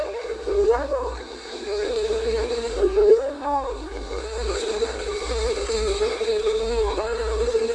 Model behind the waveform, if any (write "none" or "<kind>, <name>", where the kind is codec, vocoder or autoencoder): codec, SNAC